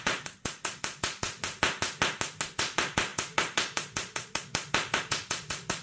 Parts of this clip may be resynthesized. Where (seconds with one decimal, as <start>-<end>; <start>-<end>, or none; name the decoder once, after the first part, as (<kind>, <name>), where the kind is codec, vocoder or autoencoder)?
0.0-1.4 (vocoder, Vocos); 2.5-5.8